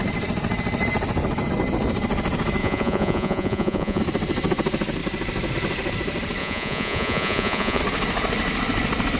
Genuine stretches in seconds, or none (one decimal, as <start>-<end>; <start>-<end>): 0.0-2.6; 4.0-6.4; 7.8-9.2